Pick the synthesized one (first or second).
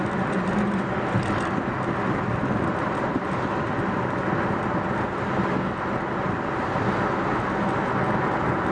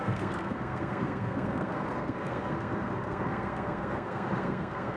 second